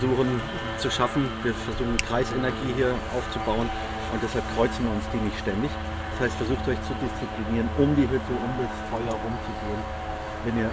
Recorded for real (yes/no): yes